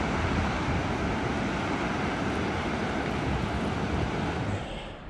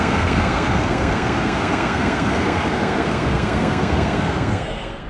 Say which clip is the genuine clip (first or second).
first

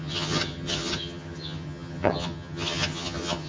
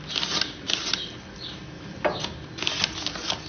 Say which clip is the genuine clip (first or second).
second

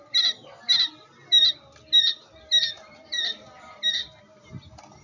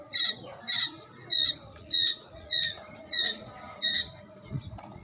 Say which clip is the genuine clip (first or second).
first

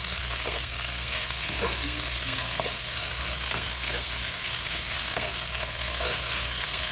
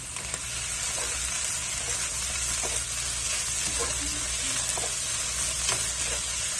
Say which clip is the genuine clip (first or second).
second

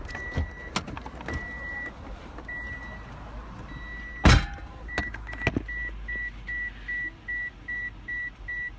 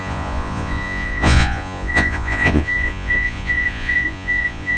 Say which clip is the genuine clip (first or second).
first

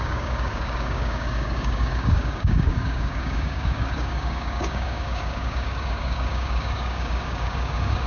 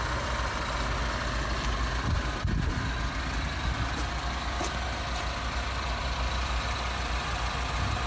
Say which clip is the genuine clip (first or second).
second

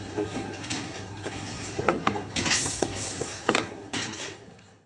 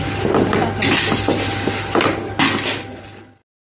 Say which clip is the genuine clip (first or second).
second